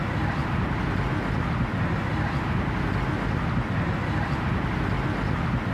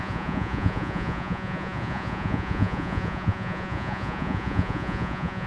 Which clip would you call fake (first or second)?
second